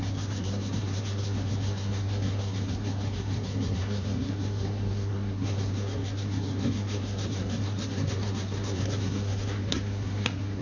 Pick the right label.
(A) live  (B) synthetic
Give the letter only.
B